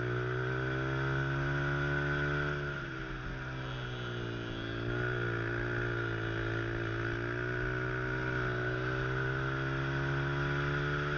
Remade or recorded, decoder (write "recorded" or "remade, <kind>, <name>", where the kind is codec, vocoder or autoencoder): recorded